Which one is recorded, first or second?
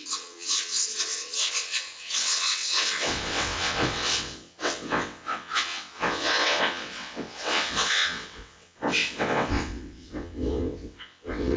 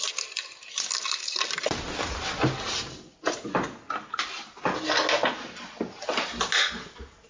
second